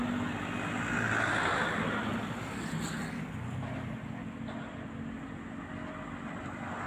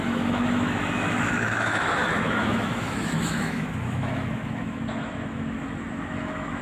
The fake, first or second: second